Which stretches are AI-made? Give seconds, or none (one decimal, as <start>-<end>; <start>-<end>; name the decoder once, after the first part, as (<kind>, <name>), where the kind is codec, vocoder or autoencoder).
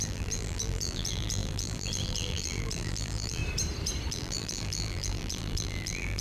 0.0-3.4 (vocoder, BigVGAN v2); 4.1-6.2